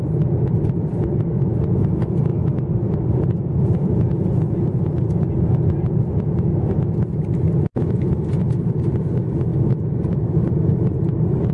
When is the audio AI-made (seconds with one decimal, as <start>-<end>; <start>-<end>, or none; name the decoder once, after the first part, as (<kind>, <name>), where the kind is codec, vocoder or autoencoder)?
0.0-11.5 (vocoder, BigVGAN v2)